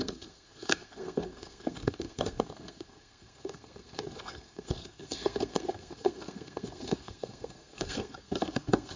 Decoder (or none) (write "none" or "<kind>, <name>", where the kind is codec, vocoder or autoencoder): codec, SNAC